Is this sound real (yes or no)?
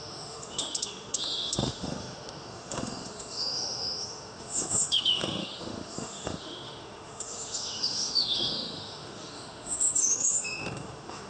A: no